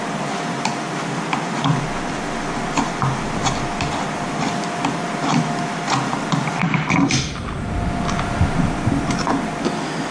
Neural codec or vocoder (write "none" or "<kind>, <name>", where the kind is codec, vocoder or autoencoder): none